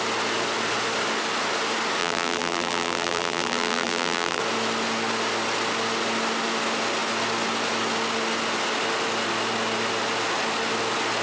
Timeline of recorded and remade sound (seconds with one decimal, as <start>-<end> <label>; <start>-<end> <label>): 0.0-2.0 recorded; 2.0-4.4 remade; 4.4-11.2 recorded